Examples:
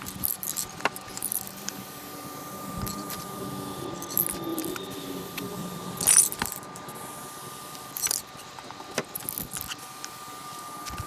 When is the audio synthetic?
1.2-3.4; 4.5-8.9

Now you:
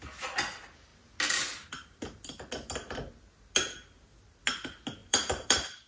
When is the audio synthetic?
5.0-5.9

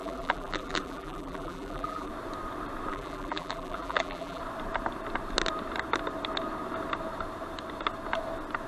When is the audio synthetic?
0.0-2.1; 2.9-4.4

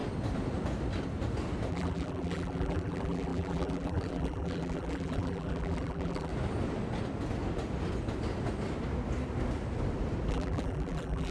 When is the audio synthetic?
1.7-6.3; 10.3-11.3

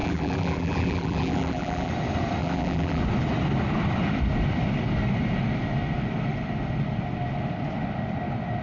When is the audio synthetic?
0.0-1.9; 2.4-3.0

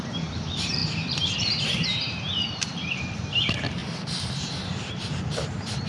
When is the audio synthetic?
0.0-5.9